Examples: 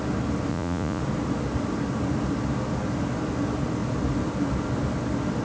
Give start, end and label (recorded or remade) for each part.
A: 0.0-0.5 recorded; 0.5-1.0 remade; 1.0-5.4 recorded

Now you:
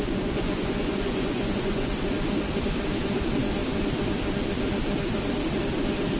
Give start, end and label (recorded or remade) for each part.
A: 0.0-1.9 remade; 1.9-6.2 recorded

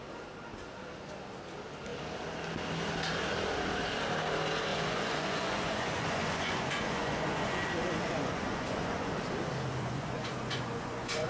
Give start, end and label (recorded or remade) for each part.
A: 0.0-4.7 recorded; 4.7-9.1 remade; 9.1-9.7 recorded; 9.7-11.3 remade

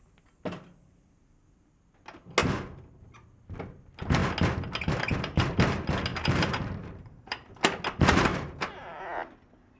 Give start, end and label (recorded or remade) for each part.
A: 0.0-6.1 recorded; 6.1-7.5 remade; 7.5-8.3 recorded; 8.3-9.0 remade; 9.0-9.8 recorded